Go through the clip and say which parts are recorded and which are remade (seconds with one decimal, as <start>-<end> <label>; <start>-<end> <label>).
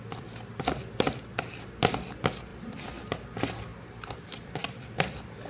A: 0.0-2.5 recorded; 2.5-3.1 remade; 3.1-3.7 recorded; 3.7-4.2 remade; 4.2-5.5 recorded